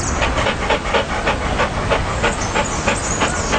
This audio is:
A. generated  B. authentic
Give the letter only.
B